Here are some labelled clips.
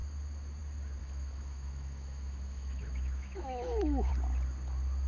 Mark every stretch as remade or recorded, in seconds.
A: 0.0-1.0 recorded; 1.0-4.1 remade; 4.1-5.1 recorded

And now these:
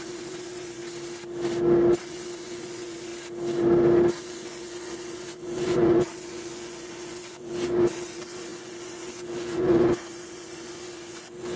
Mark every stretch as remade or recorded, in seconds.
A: 0.0-0.8 remade; 0.8-2.0 recorded; 2.0-3.1 remade; 3.1-4.2 recorded; 4.2-11.6 remade

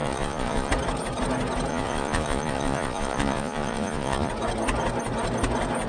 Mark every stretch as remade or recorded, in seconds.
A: 0.0-0.7 remade; 0.7-1.7 recorded; 1.7-4.3 remade; 4.3-5.9 recorded